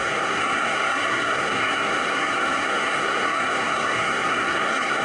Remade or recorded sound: remade